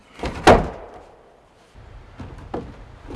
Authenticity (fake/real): real